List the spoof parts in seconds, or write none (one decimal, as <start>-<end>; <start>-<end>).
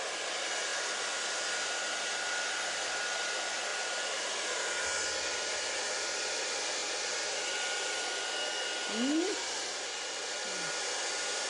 3.7-4.3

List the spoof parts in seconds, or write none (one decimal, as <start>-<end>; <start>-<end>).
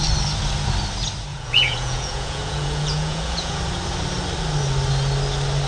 1.3-3.6